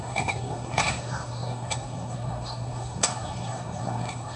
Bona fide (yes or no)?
no